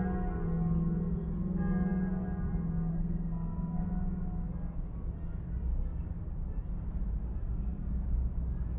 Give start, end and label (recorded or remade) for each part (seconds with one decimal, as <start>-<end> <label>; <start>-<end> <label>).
0.0-2.9 recorded; 2.9-3.8 remade; 3.8-7.4 recorded; 7.4-7.9 remade; 7.9-8.8 recorded